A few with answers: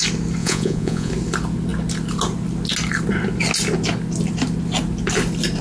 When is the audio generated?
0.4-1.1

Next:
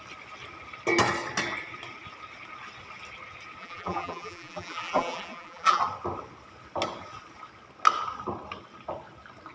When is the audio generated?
3.6-5.8

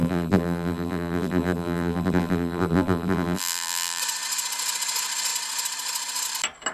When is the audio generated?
0.0-4.0